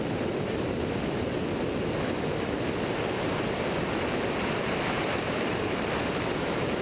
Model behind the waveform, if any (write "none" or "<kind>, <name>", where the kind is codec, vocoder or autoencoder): none